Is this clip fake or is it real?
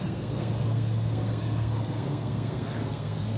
fake